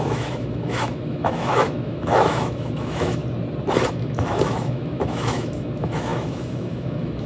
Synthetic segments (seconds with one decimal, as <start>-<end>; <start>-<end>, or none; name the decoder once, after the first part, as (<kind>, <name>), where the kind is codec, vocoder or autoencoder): 0.0-3.2 (autoencoder, DAC-VAE); 3.9-7.3

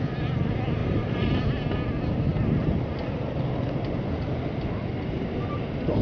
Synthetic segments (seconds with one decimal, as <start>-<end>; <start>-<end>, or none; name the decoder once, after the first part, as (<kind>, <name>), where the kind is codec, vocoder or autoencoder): 0.8-1.4 (vocoder, BigVGAN v2)